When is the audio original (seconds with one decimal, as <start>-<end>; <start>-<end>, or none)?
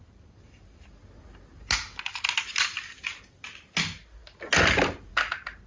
0.0-5.7